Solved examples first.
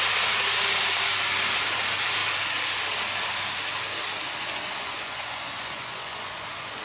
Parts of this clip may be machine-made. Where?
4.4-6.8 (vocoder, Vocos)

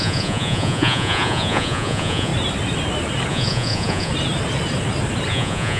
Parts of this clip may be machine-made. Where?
0.0-2.3 (vocoder, Vocos); 3.3-4.1; 5.3-5.8

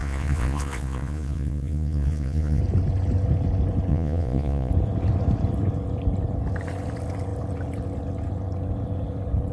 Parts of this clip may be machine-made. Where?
0.0-2.6 (vocoder, Vocos); 3.9-4.7

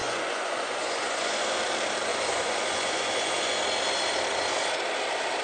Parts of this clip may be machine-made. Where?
0.0-1.6 (vocoder, Vocos); 2.1-3.6

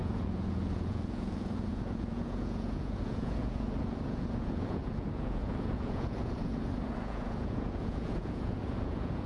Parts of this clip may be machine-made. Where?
0.0-9.3 (vocoder, Vocos)

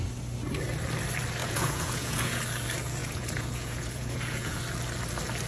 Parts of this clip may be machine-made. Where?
1.4-2.4 (vocoder, Vocos); 3.0-4.6

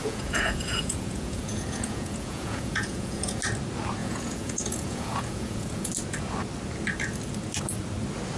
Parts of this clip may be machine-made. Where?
0.0-3.4 (vocoder, Vocos); 4.0-5.9